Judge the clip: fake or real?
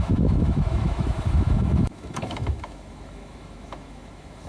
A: fake